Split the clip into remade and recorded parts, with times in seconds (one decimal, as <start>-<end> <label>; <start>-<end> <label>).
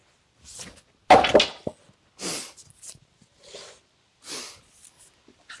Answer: 0.0-5.6 recorded